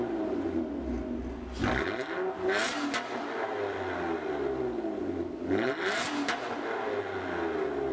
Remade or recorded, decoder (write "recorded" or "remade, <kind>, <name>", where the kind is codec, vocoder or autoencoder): recorded